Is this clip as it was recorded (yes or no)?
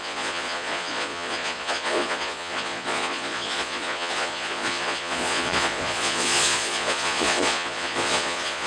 no